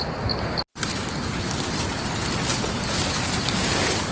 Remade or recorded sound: recorded